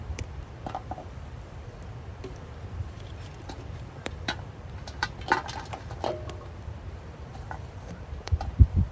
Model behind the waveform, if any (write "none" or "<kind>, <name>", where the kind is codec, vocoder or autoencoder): vocoder, BigVGAN v2